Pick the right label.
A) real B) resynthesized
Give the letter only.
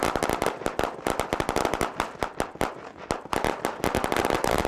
A